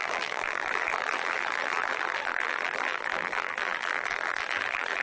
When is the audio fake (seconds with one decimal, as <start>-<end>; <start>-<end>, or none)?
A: 0.0-5.0